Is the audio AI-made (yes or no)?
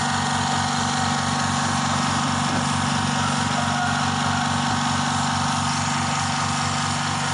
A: no